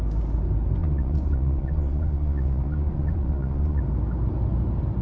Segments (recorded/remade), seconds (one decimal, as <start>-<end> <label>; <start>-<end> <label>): 0.0-0.8 recorded; 0.8-3.8 remade; 3.8-5.0 recorded